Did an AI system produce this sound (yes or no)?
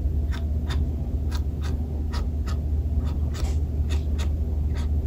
no